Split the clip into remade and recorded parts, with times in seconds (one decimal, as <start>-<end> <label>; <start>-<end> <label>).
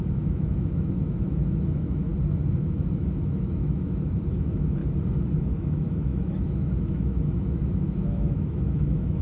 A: 0.0-2.1 remade; 2.1-2.6 recorded; 2.6-4.8 remade; 4.8-5.4 recorded; 5.4-9.2 remade